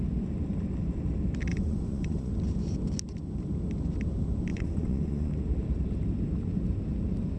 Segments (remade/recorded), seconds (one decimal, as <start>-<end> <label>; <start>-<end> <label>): 0.0-1.5 recorded; 1.5-2.3 remade; 2.3-4.5 recorded; 4.5-5.3 remade; 5.3-7.4 recorded